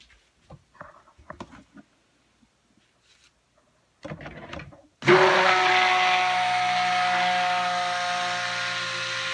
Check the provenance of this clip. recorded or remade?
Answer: recorded